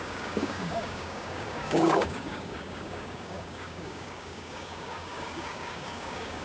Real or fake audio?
fake